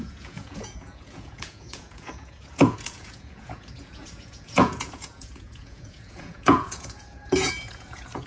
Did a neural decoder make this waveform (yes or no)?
yes